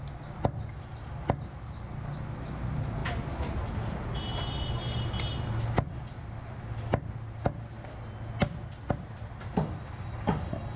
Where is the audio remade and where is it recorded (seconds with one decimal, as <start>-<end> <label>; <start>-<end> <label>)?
0.0-10.8 recorded

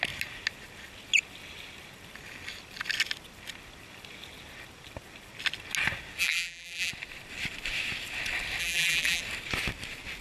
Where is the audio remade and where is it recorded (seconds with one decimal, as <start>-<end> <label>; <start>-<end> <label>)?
0.0-6.2 recorded; 6.2-6.9 remade; 6.9-8.6 recorded; 8.6-9.2 remade; 9.2-10.2 recorded

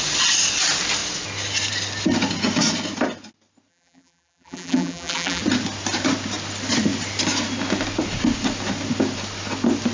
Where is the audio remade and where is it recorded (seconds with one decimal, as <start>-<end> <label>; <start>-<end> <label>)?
0.0-3.7 recorded; 3.7-5.4 remade; 5.4-9.9 recorded

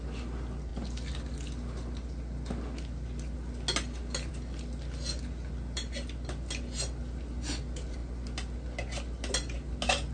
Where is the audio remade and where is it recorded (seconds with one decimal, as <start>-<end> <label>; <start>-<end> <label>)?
0.0-10.1 recorded

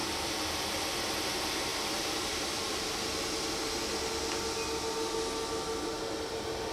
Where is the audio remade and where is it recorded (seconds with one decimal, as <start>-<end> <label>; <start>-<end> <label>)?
0.0-0.6 remade; 0.6-1.7 recorded; 1.7-3.0 remade; 3.0-6.7 recorded

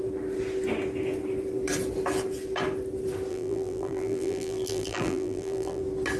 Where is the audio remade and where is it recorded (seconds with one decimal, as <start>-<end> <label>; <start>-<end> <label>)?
0.0-3.3 recorded; 3.3-5.8 remade; 5.8-6.2 recorded